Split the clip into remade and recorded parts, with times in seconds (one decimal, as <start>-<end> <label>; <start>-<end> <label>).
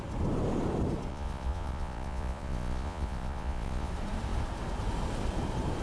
0.0-1.1 recorded; 1.1-3.9 remade; 3.9-5.8 recorded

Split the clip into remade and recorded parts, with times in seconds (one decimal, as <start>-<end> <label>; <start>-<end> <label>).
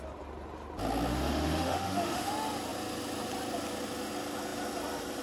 0.0-1.1 recorded; 1.1-2.3 remade; 2.3-5.2 recorded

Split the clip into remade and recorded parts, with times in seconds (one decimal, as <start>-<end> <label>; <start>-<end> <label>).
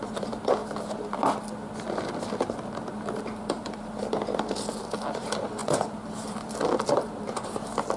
0.0-0.6 remade; 0.6-3.2 recorded; 3.2-8.0 remade